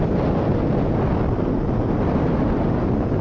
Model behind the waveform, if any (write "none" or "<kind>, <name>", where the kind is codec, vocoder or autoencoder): none